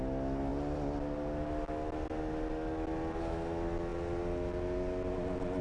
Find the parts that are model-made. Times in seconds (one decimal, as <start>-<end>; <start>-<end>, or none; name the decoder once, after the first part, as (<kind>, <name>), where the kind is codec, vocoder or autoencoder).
none